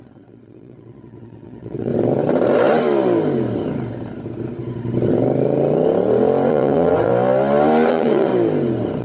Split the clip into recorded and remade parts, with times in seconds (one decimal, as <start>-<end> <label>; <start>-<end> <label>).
0.0-1.9 remade; 1.9-6.5 recorded; 6.5-7.1 remade; 7.1-7.9 recorded; 7.9-8.3 remade; 8.3-9.0 recorded

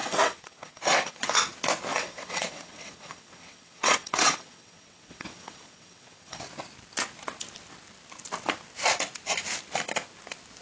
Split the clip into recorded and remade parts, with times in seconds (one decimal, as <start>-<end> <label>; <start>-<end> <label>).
0.0-1.4 remade; 1.4-1.9 recorded; 1.9-6.4 remade; 6.4-10.6 recorded

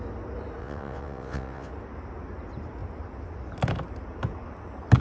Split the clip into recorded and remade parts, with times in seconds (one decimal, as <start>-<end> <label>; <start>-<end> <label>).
0.0-0.6 recorded; 0.6-1.7 remade; 1.7-5.0 recorded

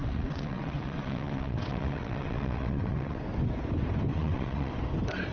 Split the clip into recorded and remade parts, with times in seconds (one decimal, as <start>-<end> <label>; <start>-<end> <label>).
0.0-3.2 remade; 3.2-4.1 recorded; 4.1-4.7 remade; 4.7-5.3 recorded

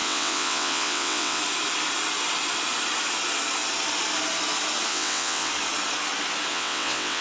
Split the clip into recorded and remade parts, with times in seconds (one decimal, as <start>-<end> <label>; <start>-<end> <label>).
0.0-1.4 remade; 1.4-4.9 recorded; 4.9-5.5 remade; 5.5-6.5 recorded; 6.5-7.2 remade

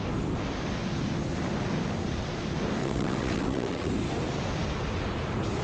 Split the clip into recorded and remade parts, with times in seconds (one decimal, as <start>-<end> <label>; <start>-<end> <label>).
0.0-2.8 recorded; 2.8-3.9 remade; 3.9-5.6 recorded

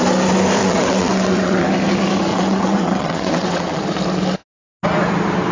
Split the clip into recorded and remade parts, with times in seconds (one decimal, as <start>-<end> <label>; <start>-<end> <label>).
0.0-0.6 recorded; 0.6-1.6 remade; 1.6-2.3 recorded; 2.3-3.8 remade; 3.8-5.5 recorded